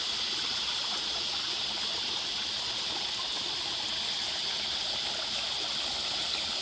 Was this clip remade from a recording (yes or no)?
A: no